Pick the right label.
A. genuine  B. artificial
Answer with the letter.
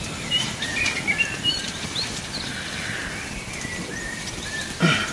A